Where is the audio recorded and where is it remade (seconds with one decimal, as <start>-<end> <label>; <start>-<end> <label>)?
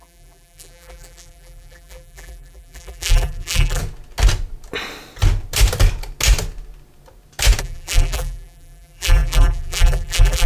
0.0-3.8 remade; 3.8-7.6 recorded; 7.6-10.5 remade